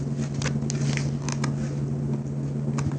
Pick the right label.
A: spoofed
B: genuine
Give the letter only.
B